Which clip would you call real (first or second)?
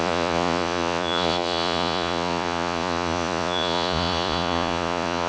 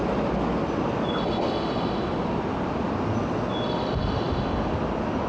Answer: second